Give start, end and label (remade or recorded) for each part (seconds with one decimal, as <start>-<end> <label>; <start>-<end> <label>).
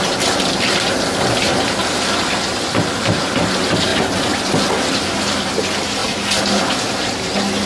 0.0-7.7 recorded